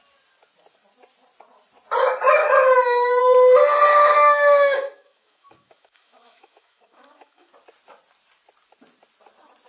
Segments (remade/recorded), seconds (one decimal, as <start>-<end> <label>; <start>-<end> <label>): 0.0-2.4 recorded; 2.4-3.2 remade; 3.2-3.9 recorded; 3.9-7.5 remade; 7.5-9.7 recorded